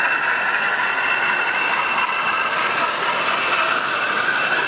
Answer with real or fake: real